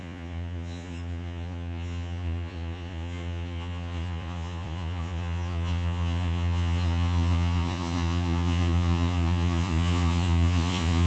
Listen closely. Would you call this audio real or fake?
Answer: fake